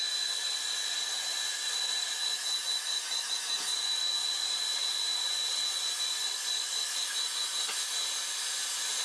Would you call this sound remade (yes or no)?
no